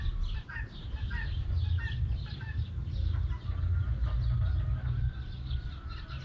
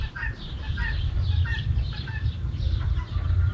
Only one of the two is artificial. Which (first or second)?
second